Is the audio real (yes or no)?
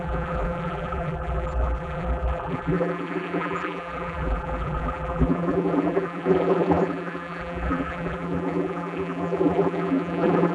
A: no